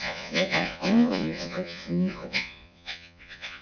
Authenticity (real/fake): fake